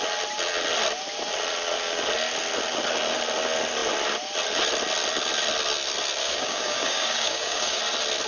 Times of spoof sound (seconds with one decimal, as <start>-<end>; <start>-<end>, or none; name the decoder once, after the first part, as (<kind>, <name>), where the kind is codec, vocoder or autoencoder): 6.2-7.8 (codec, DAC)